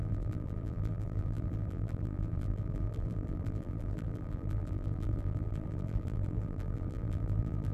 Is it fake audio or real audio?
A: fake